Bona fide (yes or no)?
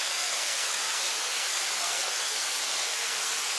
no